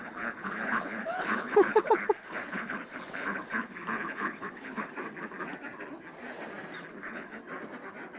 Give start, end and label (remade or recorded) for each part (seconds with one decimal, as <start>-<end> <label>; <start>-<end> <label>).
0.0-4.9 remade; 4.9-6.9 recorded; 6.9-7.4 remade; 7.4-8.2 recorded